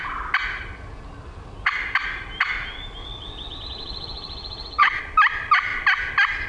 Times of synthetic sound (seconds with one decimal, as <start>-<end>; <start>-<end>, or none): 3.0-5.0